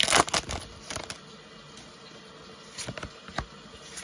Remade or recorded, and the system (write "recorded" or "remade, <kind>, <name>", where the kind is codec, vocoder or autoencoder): recorded